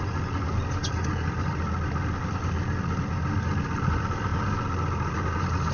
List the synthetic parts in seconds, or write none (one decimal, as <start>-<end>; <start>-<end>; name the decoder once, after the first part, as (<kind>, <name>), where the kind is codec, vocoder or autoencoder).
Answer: none